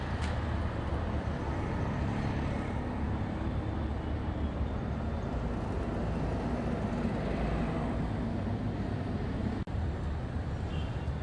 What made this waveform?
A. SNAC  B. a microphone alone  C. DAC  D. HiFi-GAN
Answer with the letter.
B